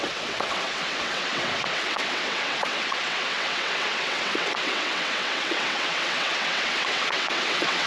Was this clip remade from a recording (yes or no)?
yes